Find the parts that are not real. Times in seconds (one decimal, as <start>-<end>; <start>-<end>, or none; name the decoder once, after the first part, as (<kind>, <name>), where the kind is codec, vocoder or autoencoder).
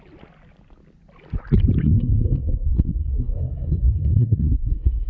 1.8-5.1 (codec, SNAC)